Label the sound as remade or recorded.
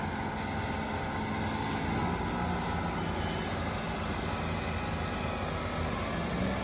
recorded